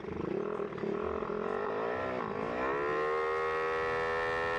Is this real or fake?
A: real